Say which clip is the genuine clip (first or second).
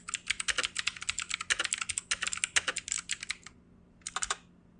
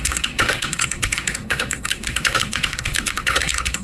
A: first